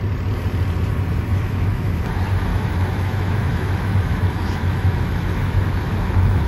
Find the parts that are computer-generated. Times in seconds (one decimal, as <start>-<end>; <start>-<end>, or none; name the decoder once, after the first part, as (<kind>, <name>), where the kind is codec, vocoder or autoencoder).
1.3-2.0 (autoencoder, DAC-VAE); 2.5-6.5